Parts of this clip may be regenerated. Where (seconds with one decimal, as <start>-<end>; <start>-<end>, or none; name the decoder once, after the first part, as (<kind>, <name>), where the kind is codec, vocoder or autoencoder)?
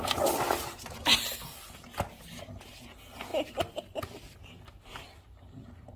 none